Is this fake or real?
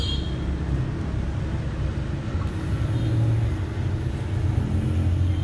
real